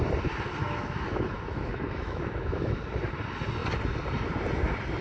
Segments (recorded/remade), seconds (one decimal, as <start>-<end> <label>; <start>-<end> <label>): 0.0-0.6 recorded; 0.6-2.8 remade; 2.8-5.0 recorded

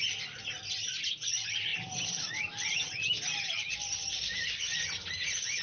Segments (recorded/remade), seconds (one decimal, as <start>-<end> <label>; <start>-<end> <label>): 0.0-5.6 recorded

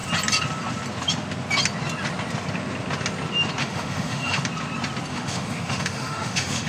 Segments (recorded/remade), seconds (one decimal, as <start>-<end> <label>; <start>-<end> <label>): 0.0-3.6 recorded; 3.6-4.4 remade; 4.4-5.1 recorded; 5.1-6.7 remade

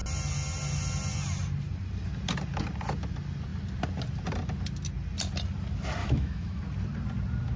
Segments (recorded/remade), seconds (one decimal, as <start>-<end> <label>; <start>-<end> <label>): 0.0-6.0 recorded; 6.0-6.6 remade; 6.6-7.6 recorded

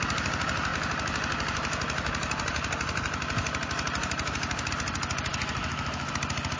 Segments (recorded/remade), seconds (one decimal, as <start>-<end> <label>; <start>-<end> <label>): 0.0-5.3 recorded; 5.3-6.1 remade; 6.1-6.6 recorded

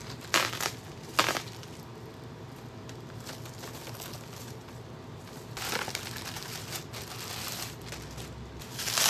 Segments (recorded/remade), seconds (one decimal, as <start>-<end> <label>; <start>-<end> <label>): 0.0-9.1 recorded

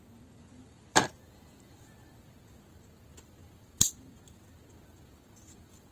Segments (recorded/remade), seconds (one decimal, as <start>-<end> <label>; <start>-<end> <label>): 0.0-5.9 recorded

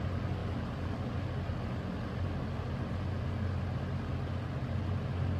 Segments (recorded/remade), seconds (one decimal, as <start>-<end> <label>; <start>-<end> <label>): 0.0-5.4 recorded